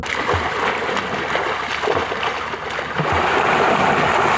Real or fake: real